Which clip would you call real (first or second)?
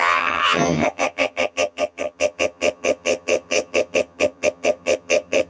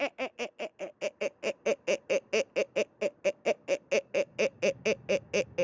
second